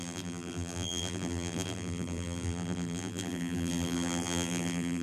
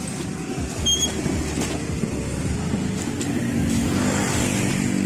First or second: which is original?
second